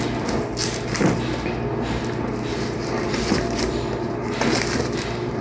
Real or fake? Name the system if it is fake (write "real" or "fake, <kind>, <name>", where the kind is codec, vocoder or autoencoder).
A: real